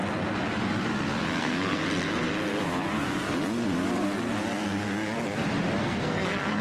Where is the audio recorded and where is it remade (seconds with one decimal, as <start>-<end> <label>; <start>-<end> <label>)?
0.0-1.4 recorded; 1.4-1.8 remade; 1.8-5.8 recorded; 5.8-6.6 remade